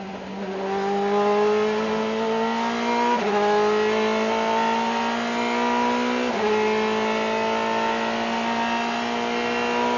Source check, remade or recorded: recorded